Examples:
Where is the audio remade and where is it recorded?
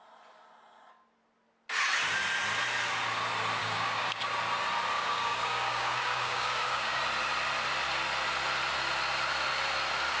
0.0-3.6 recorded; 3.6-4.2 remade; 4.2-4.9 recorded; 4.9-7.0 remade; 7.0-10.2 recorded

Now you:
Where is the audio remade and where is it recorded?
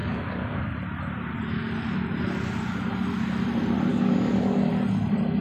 0.0-0.7 remade; 0.7-3.9 recorded; 3.9-4.7 remade; 4.7-5.4 recorded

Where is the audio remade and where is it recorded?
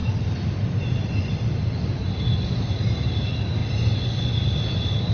0.0-5.1 recorded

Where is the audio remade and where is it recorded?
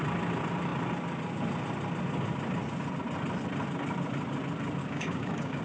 0.0-4.8 recorded; 4.8-5.6 remade